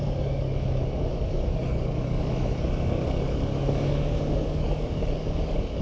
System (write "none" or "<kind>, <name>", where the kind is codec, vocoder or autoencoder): codec, DAC